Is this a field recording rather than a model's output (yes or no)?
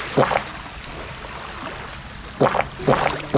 yes